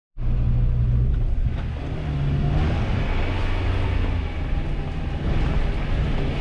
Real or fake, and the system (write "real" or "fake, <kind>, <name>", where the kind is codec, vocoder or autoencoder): real